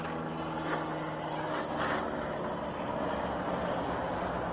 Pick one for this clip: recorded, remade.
recorded